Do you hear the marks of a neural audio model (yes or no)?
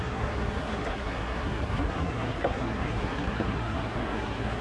yes